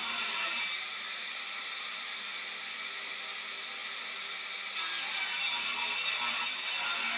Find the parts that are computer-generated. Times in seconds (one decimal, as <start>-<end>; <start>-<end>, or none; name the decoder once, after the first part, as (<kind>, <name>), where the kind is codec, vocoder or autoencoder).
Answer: 0.0-2.2 (vocoder, BigVGAN v2); 3.8-6.1